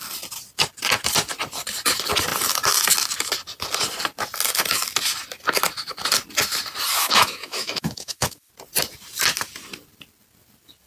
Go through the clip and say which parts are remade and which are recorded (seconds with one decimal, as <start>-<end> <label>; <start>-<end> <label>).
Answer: 0.0-7.0 recorded; 7.0-8.5 remade; 8.5-10.9 recorded